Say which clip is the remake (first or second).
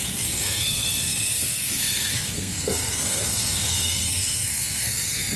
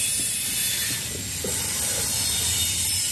first